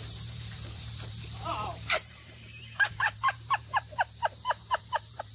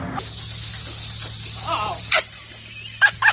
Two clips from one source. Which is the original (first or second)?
second